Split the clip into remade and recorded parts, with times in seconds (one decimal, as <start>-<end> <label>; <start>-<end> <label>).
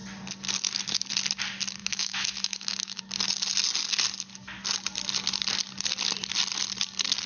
0.0-1.8 recorded; 1.8-3.0 remade; 3.0-7.3 recorded